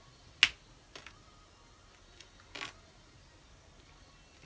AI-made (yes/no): no